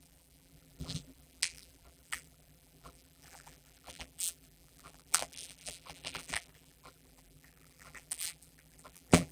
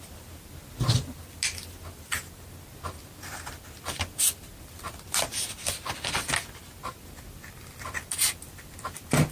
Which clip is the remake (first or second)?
first